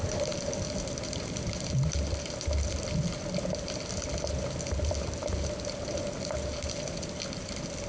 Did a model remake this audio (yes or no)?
no